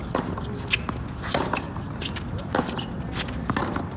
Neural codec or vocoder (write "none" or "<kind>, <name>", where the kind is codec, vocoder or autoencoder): none